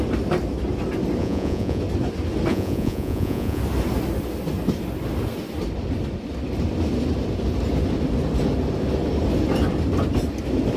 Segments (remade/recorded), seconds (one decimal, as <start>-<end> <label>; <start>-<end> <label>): 0.0-1.2 recorded; 1.2-1.8 remade; 1.8-2.5 recorded; 2.5-3.6 remade; 3.6-10.8 recorded